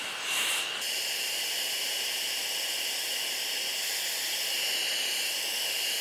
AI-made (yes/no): no